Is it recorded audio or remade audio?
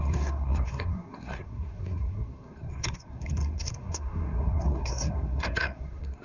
remade